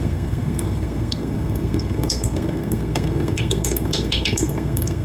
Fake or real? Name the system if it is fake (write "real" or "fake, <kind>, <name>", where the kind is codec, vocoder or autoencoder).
fake, codec, SNAC